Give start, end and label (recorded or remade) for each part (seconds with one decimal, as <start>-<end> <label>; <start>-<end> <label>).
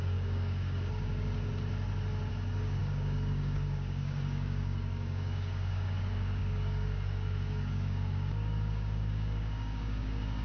0.0-1.5 remade; 1.5-2.3 recorded; 2.3-10.4 remade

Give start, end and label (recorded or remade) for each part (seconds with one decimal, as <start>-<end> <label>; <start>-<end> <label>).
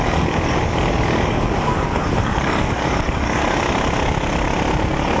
0.0-3.4 remade; 3.4-4.8 recorded; 4.8-5.2 remade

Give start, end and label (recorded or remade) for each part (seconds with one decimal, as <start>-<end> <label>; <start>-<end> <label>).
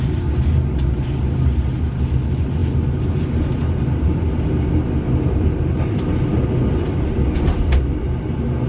0.0-8.7 recorded